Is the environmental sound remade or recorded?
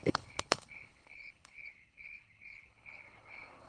remade